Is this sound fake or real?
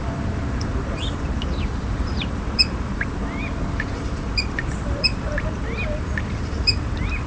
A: fake